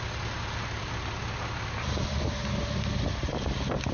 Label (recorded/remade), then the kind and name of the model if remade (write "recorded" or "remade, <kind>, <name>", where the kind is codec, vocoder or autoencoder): recorded